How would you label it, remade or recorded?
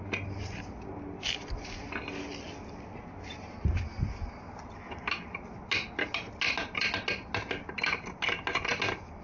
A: recorded